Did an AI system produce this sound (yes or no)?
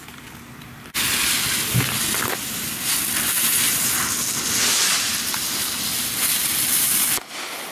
no